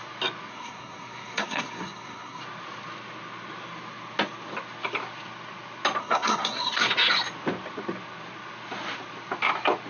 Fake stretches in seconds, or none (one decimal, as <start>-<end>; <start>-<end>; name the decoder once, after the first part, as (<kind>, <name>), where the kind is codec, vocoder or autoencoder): 0.5-2.4 (codec, SNAC); 6.0-6.8